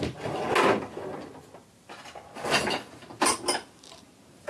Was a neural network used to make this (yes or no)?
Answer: no